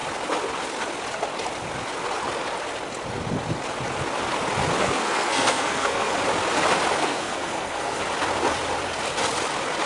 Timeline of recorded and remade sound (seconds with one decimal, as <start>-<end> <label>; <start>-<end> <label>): 0.0-4.8 recorded; 4.8-6.1 remade; 6.1-7.0 recorded; 7.0-8.0 remade; 8.0-9.9 recorded